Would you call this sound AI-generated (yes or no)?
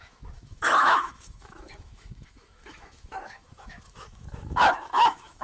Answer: yes